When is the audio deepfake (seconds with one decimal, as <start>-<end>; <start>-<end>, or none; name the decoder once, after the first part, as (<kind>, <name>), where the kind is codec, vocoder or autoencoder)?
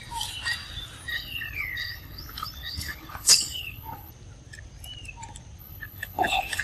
1.1-4.1 (codec, HILCodec); 5.6-6.6